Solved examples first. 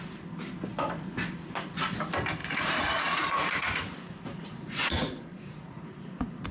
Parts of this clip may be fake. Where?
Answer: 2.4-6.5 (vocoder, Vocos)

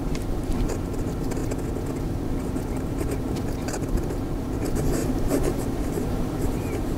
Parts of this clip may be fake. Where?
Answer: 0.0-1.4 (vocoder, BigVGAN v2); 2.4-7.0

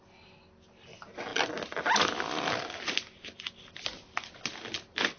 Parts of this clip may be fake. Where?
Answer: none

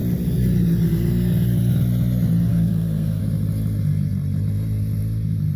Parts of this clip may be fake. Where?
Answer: 2.5-3.2 (codec, SNAC)

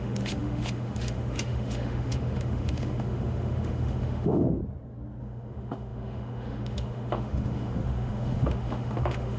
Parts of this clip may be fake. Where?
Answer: 0.0-4.6 (autoencoder, DAC-VAE); 5.2-9.4

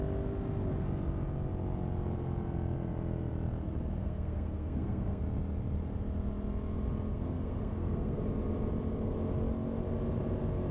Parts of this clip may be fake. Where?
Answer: 4.0-5.2 (codec, SNAC); 7.1-8.2

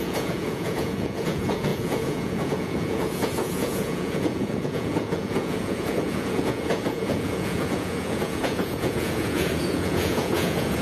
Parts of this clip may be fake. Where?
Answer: 0.0-10.8 (vocoder, Vocos)

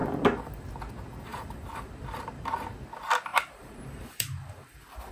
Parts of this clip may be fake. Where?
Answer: 1.3-1.9 (vocoder, BigVGAN v2); 3.3-5.1